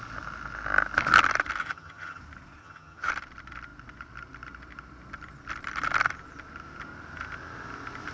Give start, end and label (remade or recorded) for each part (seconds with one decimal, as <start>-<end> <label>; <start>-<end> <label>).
0.0-1.6 recorded; 1.6-2.2 remade; 2.2-2.6 recorded; 2.6-3.1 remade; 3.1-8.1 recorded